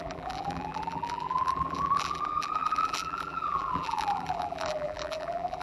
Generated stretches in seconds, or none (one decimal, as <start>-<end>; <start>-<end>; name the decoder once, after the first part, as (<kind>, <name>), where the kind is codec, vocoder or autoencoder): 0.0-5.6 (vocoder, BigVGAN v2)